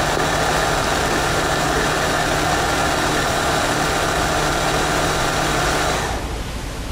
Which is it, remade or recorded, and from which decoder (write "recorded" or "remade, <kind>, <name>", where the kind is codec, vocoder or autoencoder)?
recorded